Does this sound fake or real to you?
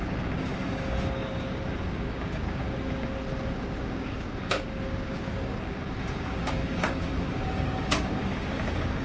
fake